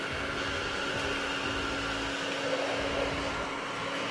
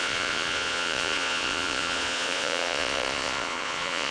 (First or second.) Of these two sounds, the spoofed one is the second